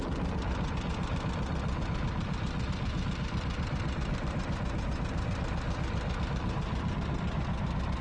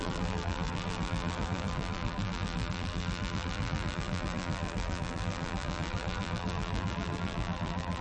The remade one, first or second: second